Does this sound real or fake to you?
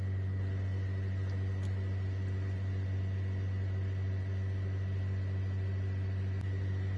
fake